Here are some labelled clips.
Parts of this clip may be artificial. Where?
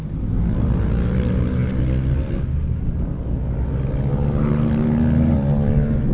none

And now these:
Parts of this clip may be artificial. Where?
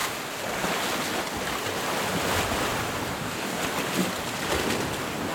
3.2-3.6 (codec, DAC)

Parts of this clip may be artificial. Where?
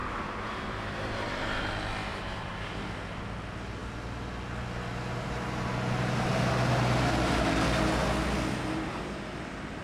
0.0-1.7 (vocoder, BigVGAN v2); 2.1-2.8